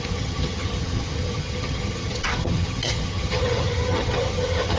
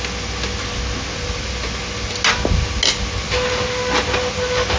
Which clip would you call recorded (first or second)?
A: second